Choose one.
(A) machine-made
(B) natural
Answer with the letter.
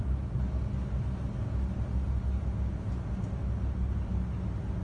B